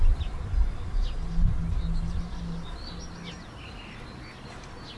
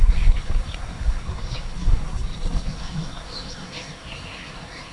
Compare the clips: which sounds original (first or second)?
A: first